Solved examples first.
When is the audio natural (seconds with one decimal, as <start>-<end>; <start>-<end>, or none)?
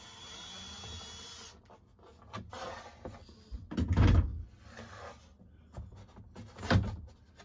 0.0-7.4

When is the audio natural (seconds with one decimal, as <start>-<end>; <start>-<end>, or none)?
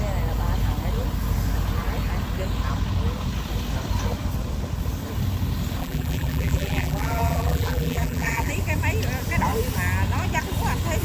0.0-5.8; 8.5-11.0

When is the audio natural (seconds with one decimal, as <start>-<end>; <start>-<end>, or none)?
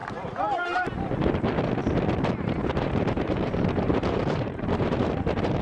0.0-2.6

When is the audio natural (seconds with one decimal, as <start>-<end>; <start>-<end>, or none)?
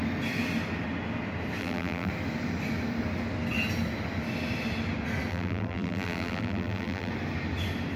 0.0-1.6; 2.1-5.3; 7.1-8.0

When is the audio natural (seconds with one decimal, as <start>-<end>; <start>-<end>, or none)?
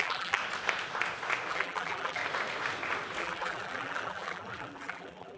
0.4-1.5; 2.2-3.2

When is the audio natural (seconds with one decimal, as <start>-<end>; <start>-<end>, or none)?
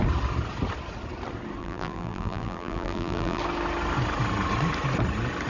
0.0-1.6; 3.4-5.5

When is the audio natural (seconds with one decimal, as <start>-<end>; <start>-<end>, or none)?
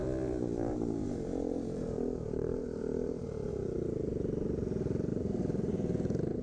3.5-5.1; 5.7-6.4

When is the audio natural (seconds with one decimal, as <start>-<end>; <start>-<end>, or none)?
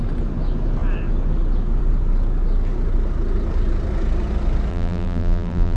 0.0-4.7